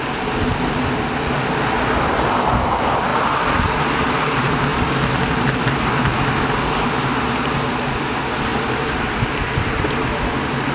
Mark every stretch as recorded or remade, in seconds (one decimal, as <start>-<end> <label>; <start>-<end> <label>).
0.0-10.7 recorded